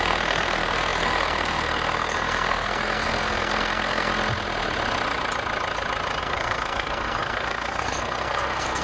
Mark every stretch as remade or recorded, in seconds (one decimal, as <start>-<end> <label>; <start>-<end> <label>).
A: 0.0-4.1 remade; 4.1-6.2 recorded; 6.2-8.8 remade